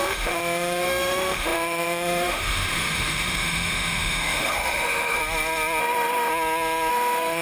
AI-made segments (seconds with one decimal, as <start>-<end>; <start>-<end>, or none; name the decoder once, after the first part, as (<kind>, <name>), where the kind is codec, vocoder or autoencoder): 0.0-5.2 (autoencoder, DAC-VAE); 5.8-6.3; 6.9-7.4